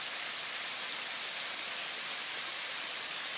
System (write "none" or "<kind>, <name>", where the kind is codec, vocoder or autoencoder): none